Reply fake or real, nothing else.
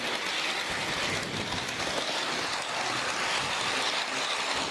real